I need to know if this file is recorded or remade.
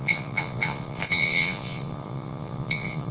remade